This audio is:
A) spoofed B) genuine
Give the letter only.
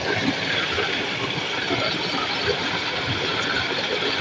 B